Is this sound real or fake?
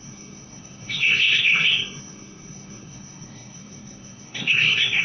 fake